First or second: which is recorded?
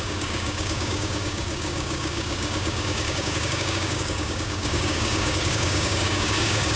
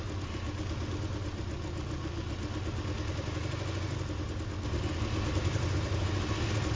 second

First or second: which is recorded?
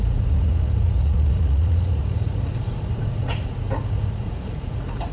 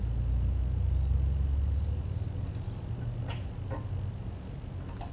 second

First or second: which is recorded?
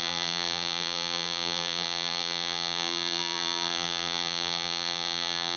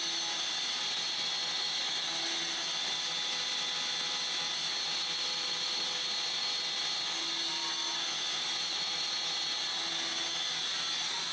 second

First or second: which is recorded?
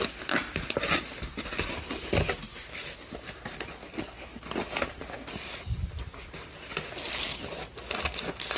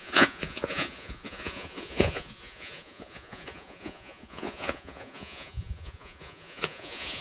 first